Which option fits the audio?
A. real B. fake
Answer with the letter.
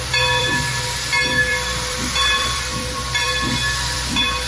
B